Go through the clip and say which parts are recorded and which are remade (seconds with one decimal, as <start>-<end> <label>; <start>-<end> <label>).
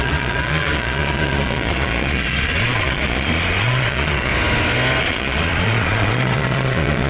0.0-4.3 remade; 4.3-5.0 recorded; 5.0-7.1 remade